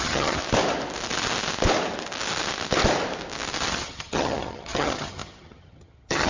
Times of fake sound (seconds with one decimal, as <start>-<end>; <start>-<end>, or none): 0.0-0.4; 3.7-6.3